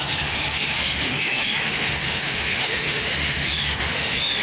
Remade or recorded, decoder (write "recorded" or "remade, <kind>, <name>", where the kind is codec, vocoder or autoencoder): remade, autoencoder, DAC-VAE